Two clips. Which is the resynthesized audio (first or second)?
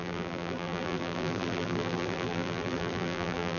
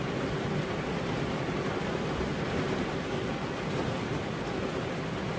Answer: first